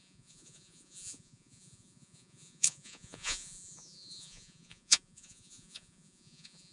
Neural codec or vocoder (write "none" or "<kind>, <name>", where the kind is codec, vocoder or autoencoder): vocoder, Vocos